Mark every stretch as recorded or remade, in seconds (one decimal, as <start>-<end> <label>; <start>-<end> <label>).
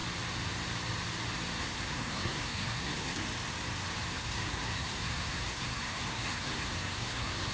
0.0-1.6 recorded; 1.6-3.2 remade; 3.2-4.1 recorded; 4.1-7.5 remade